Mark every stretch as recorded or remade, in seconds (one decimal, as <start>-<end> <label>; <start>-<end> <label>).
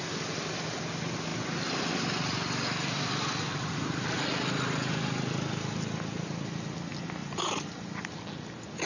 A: 0.0-8.9 recorded